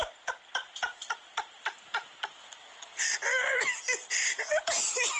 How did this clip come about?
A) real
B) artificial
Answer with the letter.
A